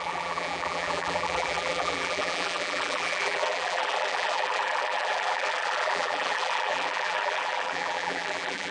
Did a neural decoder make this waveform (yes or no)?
yes